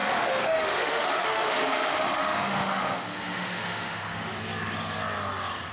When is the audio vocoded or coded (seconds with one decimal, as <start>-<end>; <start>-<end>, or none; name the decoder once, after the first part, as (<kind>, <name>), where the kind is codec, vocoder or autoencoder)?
0.0-4.3 (autoencoder, DAC-VAE)